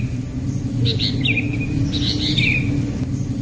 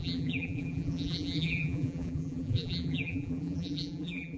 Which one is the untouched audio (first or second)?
first